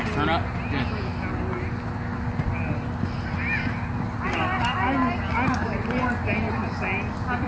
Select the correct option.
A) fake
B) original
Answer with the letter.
B